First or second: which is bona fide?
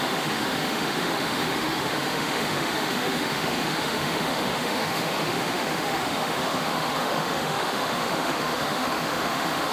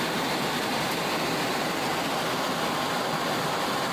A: second